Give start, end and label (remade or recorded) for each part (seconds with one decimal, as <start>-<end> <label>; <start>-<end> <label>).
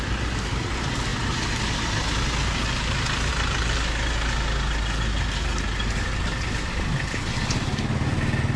0.0-8.6 recorded